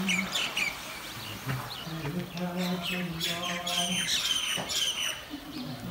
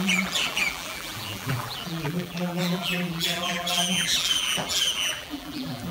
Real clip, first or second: first